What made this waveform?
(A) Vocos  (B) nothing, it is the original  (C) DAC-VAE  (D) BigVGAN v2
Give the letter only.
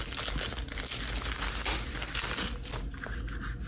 B